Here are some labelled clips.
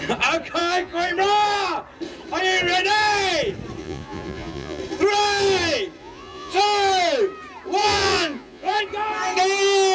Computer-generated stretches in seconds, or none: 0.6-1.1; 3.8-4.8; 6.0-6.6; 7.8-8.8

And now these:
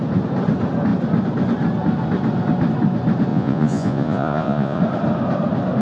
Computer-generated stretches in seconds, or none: 3.3-4.8

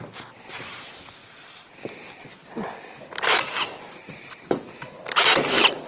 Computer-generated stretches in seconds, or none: none

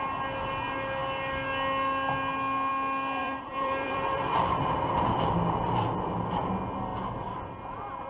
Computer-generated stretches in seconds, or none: 3.2-5.3; 6.9-7.6

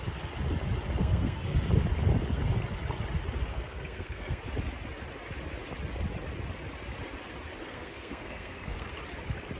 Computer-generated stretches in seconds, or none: 1.0-1.6; 3.5-4.4; 7.6-8.9

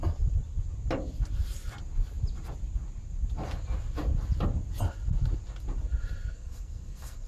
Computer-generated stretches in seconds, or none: 6.2-7.3

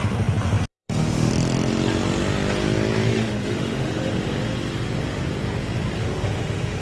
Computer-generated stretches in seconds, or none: 0.7-1.3; 3.1-4.1; 6.0-6.8